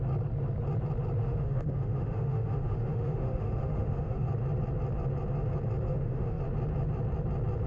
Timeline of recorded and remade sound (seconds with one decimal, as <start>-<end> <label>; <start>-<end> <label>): 0.0-1.2 recorded; 1.2-4.3 remade; 4.3-5.9 recorded; 5.9-6.4 remade; 6.4-7.7 recorded